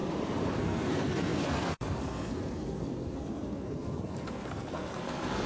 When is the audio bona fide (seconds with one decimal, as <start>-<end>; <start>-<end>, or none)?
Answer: 0.0-0.6